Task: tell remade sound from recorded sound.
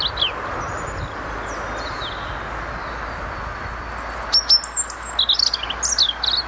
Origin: recorded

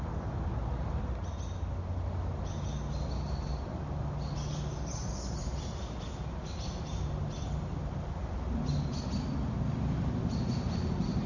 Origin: recorded